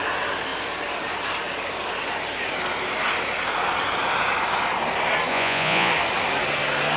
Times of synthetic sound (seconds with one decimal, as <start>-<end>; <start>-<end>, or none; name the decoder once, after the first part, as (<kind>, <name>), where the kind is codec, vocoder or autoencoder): 5.3-5.9 (vocoder, Vocos)